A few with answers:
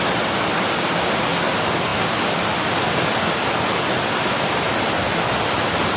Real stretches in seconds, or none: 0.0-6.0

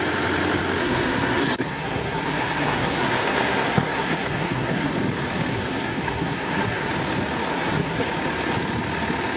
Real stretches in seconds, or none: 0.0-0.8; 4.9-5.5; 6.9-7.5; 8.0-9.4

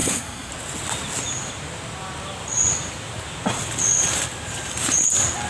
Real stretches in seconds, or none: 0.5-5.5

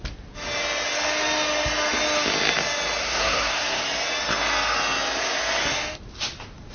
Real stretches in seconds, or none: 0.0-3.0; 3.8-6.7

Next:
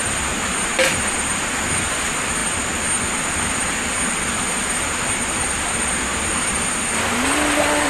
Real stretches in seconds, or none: 0.0-7.9

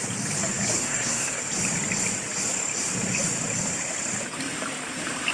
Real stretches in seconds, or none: 0.0-0.8; 1.4-5.3